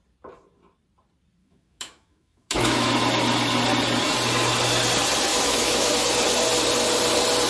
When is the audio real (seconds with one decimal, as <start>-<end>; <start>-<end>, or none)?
0.0-1.4; 2.9-5.3; 5.9-7.5

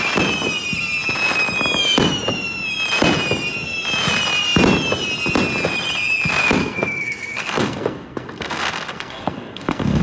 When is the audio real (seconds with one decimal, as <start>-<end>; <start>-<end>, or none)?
0.0-6.6

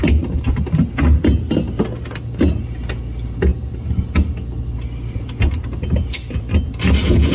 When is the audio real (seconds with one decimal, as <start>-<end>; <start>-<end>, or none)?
0.0-7.3

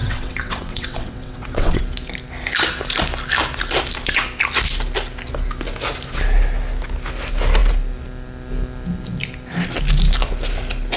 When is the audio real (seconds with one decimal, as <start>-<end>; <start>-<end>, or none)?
1.8-11.0

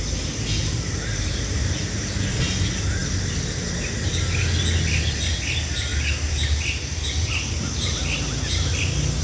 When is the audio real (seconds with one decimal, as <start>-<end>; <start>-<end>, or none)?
0.0-0.6; 2.5-5.9; 7.1-9.2

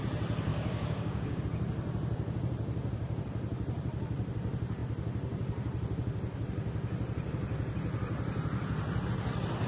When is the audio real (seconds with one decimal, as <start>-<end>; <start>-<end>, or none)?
0.0-0.5; 1.4-9.7

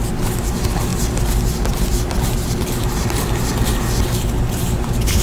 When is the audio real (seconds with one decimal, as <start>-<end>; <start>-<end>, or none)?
0.0-5.2

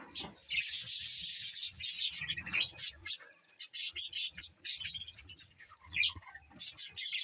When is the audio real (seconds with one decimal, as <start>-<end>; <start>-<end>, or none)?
0.0-1.2; 1.8-3.0; 6.3-7.2